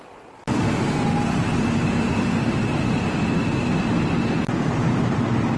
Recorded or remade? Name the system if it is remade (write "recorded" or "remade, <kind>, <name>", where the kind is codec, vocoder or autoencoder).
recorded